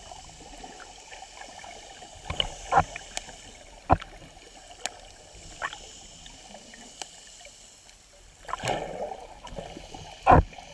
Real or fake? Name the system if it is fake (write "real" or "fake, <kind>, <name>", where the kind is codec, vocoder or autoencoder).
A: real